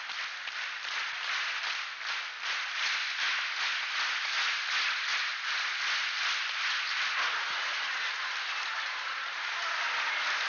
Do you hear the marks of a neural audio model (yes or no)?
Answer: no